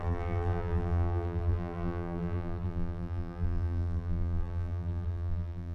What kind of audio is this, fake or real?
fake